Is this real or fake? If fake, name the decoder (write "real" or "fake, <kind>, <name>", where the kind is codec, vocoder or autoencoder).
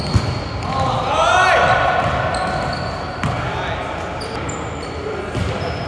real